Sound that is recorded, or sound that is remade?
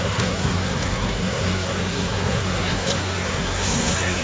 remade